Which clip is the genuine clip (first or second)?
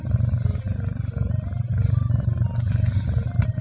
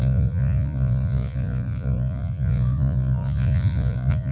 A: first